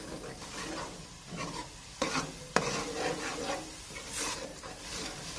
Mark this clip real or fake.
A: real